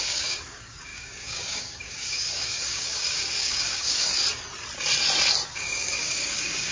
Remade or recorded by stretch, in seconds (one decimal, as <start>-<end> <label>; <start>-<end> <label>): 0.0-4.1 remade; 4.1-5.5 recorded; 5.5-6.7 remade